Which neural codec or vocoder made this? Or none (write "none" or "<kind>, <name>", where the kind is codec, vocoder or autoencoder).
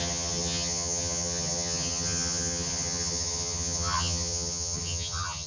vocoder, HiFi-GAN